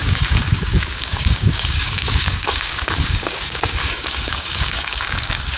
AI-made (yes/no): yes